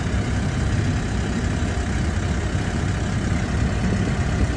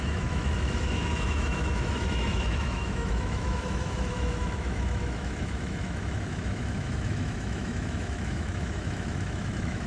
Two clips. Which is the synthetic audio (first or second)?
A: second